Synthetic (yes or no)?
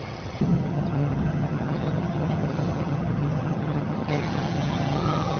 yes